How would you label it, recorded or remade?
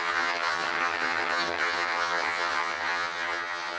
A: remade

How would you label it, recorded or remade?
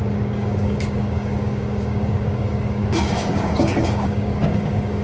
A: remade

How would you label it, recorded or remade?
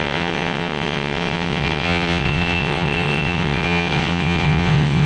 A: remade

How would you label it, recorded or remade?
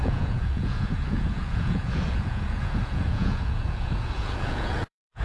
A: remade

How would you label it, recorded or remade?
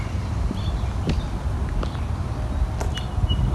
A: recorded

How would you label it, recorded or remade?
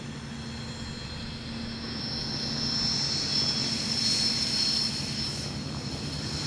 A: recorded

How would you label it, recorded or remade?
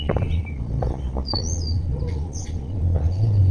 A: remade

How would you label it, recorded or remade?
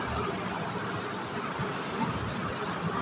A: recorded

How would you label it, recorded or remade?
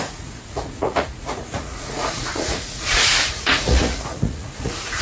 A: remade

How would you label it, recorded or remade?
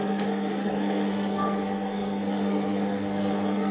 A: remade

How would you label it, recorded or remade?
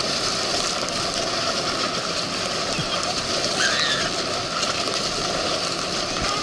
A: recorded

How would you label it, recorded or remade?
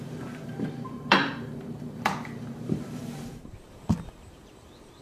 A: remade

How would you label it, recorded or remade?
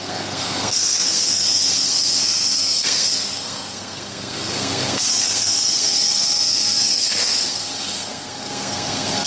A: remade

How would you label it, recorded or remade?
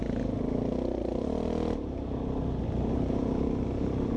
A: recorded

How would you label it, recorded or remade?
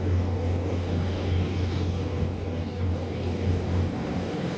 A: remade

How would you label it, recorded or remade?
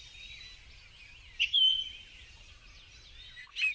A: recorded